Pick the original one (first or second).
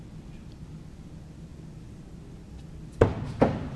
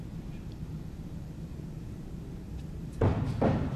first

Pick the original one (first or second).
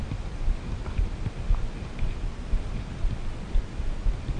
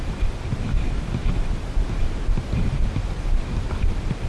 first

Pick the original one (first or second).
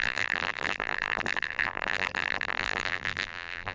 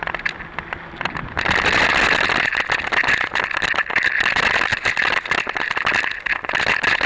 second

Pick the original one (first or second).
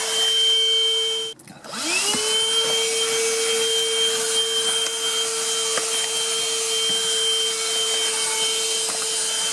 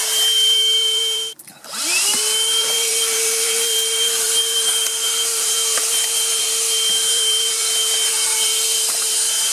first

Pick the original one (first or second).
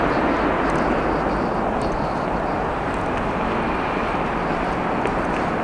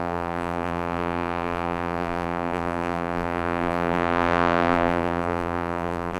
first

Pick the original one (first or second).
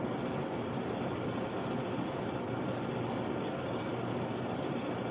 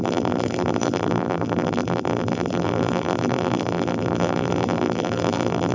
first